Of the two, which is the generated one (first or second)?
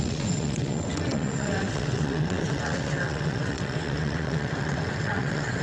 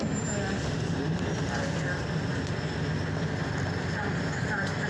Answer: first